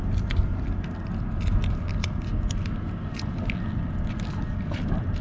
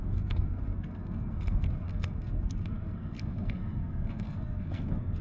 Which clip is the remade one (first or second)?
second